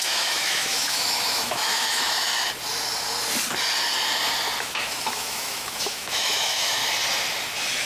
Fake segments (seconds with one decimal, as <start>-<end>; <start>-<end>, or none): 0.0-2.3; 4.6-6.8